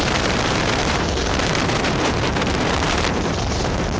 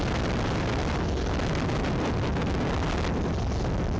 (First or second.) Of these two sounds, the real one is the second